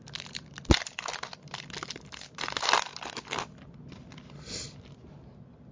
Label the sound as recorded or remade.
recorded